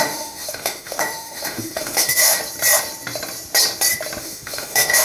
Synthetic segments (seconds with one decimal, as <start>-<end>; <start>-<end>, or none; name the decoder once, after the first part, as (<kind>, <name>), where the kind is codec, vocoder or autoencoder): 0.0-2.4 (autoencoder, DAC-VAE); 4.2-5.0